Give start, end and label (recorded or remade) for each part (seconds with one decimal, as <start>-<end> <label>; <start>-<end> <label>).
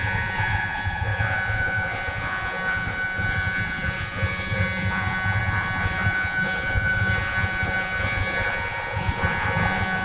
0.0-10.0 remade